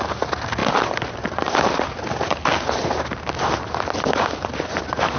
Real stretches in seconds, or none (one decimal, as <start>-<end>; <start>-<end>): 0.0-5.2